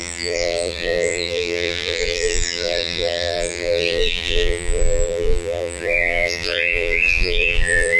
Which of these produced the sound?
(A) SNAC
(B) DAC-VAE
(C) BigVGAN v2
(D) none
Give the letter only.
C